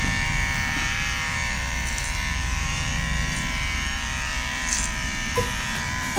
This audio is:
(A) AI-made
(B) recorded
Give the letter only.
A